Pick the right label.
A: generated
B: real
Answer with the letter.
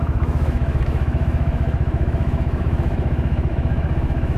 A